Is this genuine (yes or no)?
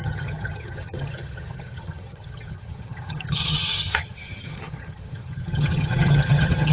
no